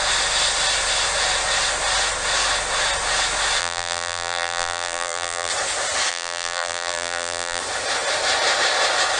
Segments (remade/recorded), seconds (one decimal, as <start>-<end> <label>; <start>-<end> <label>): 0.0-3.6 recorded; 3.6-5.5 remade; 5.5-6.1 recorded; 6.1-7.6 remade; 7.6-9.2 recorded